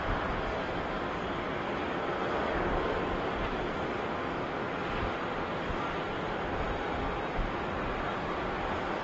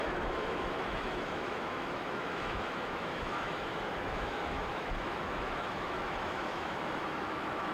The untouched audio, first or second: first